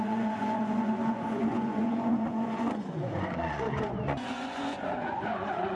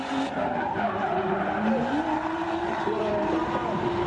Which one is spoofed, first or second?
first